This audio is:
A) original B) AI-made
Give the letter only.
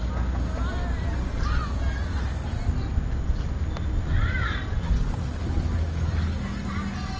A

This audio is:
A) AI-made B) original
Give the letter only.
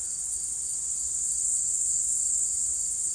A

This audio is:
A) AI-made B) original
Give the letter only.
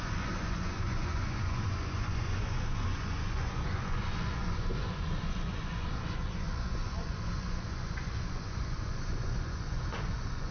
A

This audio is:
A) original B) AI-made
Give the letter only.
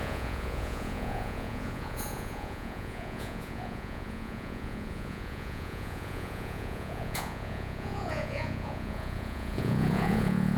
B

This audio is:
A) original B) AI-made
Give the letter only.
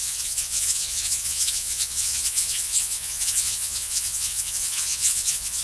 B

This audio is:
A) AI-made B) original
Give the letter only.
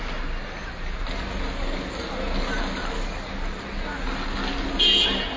B